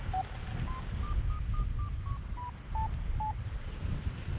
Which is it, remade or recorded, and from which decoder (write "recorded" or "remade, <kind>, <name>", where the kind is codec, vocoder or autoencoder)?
recorded